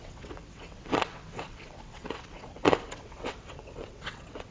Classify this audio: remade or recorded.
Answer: remade